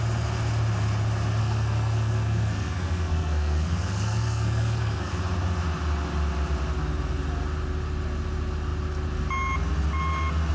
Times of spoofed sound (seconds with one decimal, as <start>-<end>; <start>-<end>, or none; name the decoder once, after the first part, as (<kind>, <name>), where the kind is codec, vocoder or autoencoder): 1.4-5.1 (codec, SNAC)